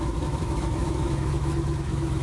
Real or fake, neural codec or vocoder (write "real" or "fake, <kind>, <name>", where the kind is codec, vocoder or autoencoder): fake, autoencoder, DAC-VAE